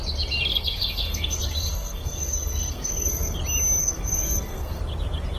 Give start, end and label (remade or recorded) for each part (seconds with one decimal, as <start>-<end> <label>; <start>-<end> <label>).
0.0-0.5 recorded; 0.5-3.4 remade; 3.4-3.8 recorded; 3.8-4.8 remade; 4.8-5.4 recorded